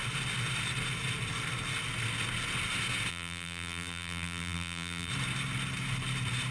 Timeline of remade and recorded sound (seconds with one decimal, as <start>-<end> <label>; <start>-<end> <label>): 0.0-3.1 recorded; 3.1-5.1 remade; 5.1-6.5 recorded